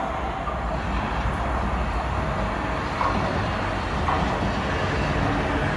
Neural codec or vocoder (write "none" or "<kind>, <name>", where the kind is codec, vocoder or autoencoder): none